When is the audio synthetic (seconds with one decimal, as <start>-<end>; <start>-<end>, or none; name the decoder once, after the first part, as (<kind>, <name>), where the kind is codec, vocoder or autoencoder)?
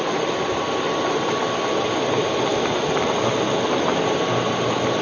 none